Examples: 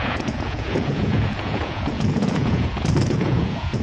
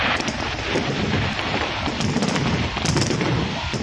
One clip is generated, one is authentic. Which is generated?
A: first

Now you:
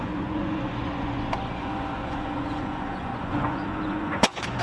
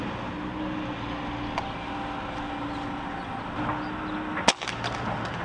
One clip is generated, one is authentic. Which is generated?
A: first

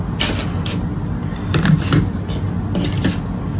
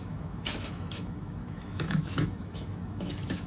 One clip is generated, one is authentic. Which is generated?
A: second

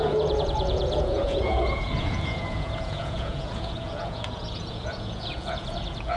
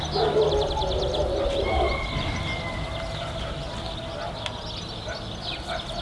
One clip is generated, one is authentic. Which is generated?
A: first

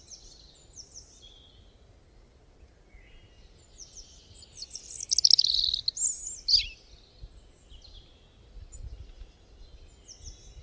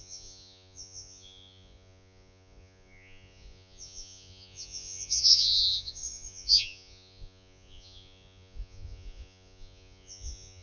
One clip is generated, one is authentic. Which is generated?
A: second